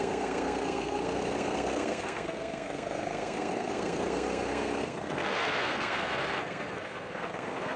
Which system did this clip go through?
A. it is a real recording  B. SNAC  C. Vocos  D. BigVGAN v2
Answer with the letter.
B